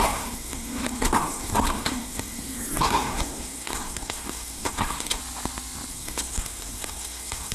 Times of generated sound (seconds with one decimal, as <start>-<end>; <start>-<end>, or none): 0.0-5.2; 5.9-7.5